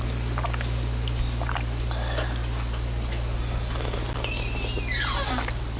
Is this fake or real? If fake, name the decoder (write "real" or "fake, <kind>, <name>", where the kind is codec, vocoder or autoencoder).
real